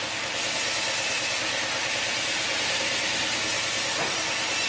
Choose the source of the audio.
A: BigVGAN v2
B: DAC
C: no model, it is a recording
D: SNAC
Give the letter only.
C